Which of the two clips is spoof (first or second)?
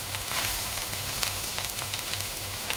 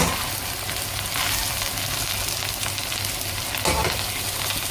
first